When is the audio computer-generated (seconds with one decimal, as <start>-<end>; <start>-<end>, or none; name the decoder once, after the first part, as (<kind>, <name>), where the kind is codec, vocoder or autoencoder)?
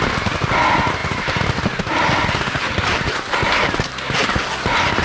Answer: none